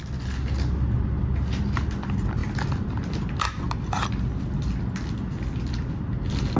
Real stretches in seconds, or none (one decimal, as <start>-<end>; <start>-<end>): 0.0-6.6